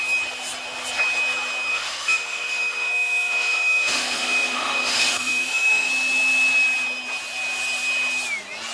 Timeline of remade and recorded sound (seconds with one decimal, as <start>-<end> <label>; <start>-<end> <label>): 0.0-1.7 recorded; 1.7-5.9 remade; 5.9-8.7 recorded